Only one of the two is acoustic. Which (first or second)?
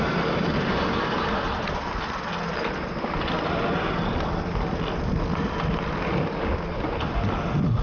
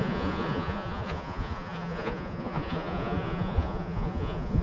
first